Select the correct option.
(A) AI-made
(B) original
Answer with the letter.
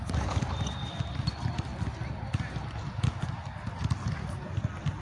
A